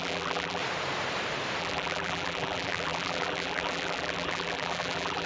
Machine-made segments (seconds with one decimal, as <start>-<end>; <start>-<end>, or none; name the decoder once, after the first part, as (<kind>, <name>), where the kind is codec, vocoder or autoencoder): 0.0-0.6 (vocoder, BigVGAN v2); 1.6-5.3